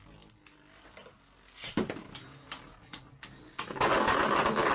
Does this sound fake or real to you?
real